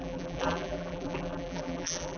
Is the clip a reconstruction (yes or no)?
yes